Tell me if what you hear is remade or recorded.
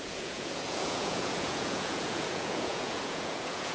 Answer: remade